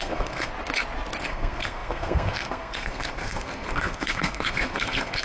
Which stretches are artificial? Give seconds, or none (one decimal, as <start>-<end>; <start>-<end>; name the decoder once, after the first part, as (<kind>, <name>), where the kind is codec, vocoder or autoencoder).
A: 0.0-0.5 (codec, SNAC); 1.2-5.2